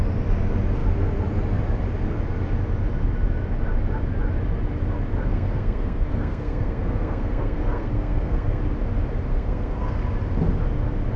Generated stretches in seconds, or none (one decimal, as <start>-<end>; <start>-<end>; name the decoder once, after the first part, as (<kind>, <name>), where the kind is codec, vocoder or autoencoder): 5.3-8.6 (codec, SNAC); 9.3-10.0